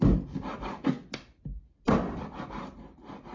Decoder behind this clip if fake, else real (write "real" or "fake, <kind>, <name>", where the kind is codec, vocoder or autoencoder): real